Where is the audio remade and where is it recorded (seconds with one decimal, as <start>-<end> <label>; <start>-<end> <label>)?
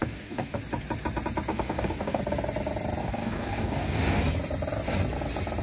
0.0-0.6 remade; 0.6-1.5 recorded; 1.5-2.2 remade; 2.2-3.0 recorded; 3.0-4.2 remade; 4.2-5.6 recorded